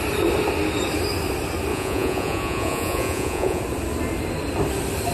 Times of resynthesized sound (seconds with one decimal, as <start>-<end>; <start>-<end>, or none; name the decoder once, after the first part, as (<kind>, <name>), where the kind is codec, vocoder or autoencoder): 1.7-3.6 (vocoder, Vocos)